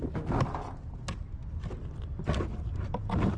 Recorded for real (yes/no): yes